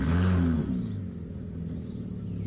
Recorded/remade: recorded